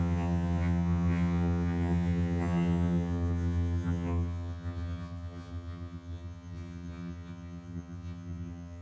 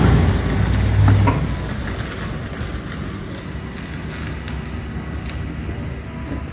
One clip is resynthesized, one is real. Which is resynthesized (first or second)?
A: first